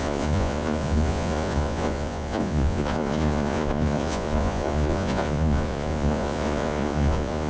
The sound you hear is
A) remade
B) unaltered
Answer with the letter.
A